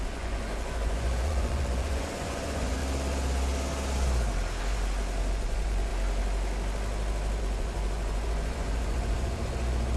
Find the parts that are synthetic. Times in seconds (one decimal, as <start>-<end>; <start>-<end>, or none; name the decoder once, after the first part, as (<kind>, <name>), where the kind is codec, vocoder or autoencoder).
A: 0.0-2.8 (vocoder, Vocos); 5.3-5.9; 7.4-10.0